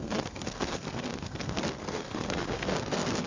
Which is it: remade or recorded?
remade